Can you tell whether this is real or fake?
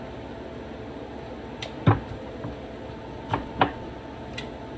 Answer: real